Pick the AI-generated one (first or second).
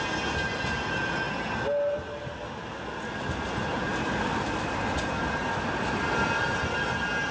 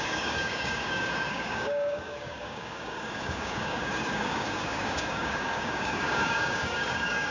second